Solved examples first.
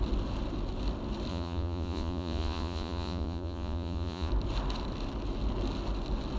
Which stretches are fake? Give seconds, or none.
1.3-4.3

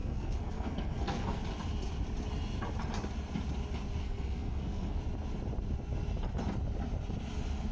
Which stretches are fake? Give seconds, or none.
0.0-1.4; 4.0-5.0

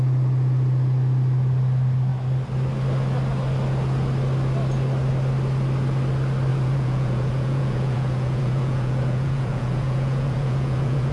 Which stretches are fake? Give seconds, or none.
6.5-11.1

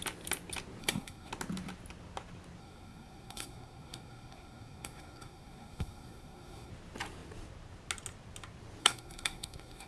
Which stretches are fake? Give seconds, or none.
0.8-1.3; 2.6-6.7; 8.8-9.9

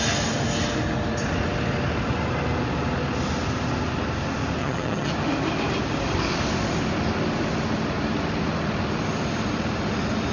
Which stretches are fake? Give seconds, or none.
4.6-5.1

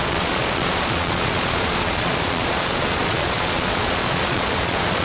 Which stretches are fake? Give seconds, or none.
0.0-5.0

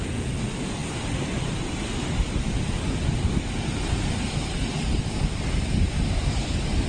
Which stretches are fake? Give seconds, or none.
none